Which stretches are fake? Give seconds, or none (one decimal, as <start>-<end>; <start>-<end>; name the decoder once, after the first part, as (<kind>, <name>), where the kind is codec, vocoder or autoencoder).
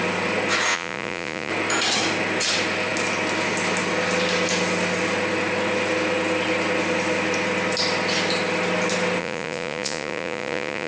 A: 0.7-1.5 (vocoder, Vocos); 9.2-10.9